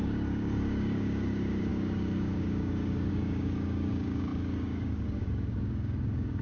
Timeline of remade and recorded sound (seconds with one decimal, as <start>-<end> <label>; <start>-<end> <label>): 0.0-6.4 remade